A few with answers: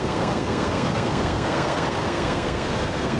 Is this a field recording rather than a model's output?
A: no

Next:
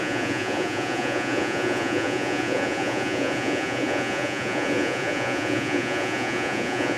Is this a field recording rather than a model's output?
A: no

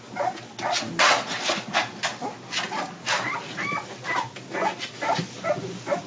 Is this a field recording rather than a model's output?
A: yes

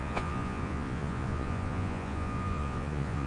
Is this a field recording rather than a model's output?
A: no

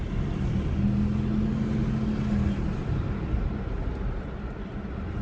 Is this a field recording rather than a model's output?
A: yes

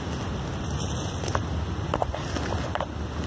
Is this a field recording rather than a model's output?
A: yes